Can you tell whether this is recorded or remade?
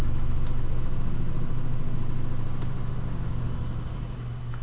recorded